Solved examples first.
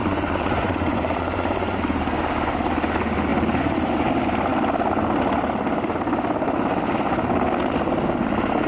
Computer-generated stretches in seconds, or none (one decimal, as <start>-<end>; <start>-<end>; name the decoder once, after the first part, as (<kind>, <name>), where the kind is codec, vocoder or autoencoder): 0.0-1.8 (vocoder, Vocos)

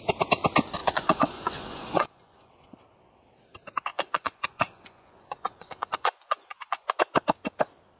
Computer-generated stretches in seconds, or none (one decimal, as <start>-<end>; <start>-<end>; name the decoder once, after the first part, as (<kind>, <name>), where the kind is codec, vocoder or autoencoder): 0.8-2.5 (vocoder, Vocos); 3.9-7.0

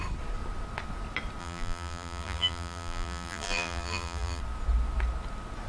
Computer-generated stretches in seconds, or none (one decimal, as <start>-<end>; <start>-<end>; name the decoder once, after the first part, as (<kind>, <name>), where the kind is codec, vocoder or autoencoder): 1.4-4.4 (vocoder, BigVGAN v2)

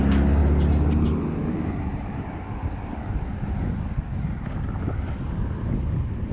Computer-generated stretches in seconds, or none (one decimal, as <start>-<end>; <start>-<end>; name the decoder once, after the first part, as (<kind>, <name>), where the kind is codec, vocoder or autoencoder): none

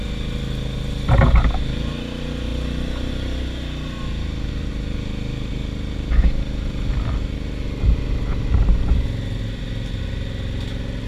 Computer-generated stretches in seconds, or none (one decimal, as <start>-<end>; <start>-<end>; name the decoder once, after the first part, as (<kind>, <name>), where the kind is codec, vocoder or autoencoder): none